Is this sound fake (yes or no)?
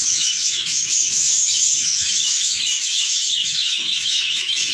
yes